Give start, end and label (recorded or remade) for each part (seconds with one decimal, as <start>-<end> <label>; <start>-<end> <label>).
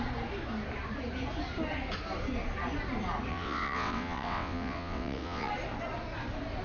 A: 0.0-3.3 recorded; 3.3-5.5 remade; 5.5-6.6 recorded